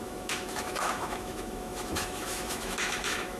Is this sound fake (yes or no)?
yes